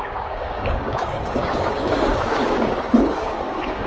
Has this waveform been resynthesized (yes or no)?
yes